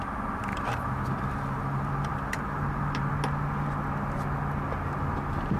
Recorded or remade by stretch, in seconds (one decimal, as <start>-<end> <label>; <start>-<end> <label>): 0.0-0.5 recorded; 0.5-3.1 remade; 3.1-5.6 recorded